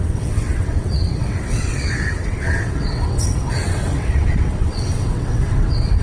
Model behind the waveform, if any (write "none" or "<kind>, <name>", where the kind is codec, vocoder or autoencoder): vocoder, WaveNeXt